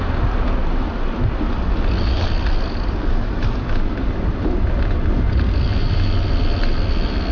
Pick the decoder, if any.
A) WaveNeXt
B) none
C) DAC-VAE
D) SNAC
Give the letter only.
B